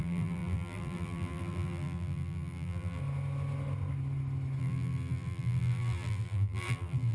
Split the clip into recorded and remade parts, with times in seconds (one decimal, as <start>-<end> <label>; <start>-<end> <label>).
0.0-3.0 remade; 3.0-4.6 recorded; 4.6-7.1 remade